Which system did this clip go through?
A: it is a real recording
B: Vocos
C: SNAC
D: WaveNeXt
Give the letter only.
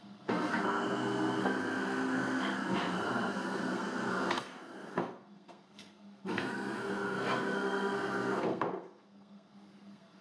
C